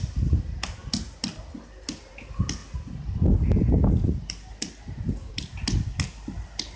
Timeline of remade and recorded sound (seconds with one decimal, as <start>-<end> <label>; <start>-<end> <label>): 0.0-6.8 recorded